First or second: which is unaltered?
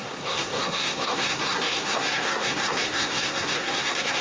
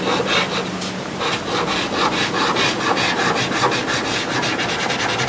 second